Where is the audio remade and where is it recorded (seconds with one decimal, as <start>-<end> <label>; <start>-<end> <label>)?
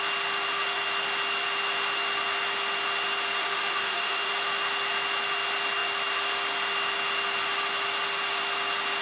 0.0-3.4 recorded; 3.4-4.3 remade; 4.3-9.0 recorded